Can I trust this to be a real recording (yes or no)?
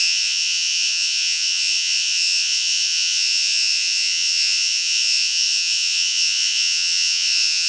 no